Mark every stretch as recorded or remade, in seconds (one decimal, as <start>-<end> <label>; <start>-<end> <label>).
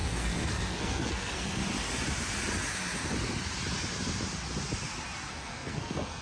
0.0-1.6 remade; 1.6-5.3 recorded; 5.3-6.2 remade